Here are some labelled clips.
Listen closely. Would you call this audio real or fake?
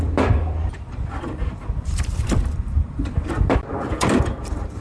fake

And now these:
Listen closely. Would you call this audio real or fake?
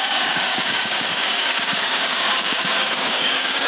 fake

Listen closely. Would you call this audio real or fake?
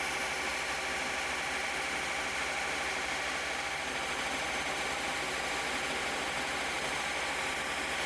real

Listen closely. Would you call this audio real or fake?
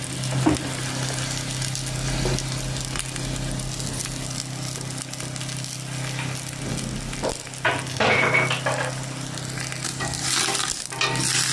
real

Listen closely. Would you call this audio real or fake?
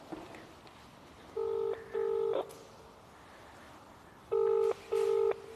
real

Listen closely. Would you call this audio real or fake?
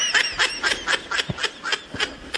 real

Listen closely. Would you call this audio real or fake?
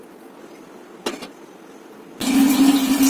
real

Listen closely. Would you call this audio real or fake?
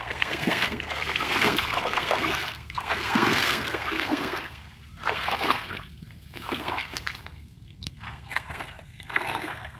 fake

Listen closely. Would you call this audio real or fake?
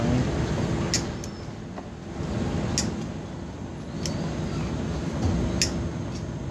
real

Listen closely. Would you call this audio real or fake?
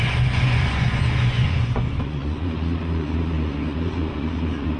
fake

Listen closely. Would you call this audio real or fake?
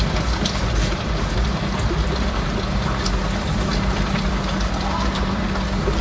real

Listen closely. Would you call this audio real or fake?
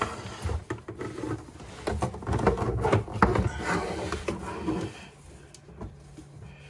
real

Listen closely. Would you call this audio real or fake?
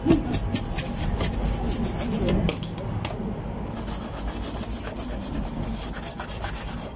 real